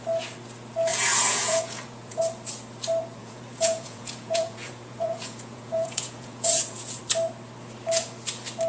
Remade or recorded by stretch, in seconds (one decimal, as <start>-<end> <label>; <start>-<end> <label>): 0.0-0.9 recorded; 0.9-2.2 remade; 2.2-3.2 recorded; 3.2-7.0 remade; 7.0-8.7 recorded